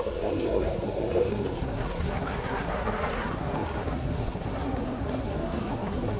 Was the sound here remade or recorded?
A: remade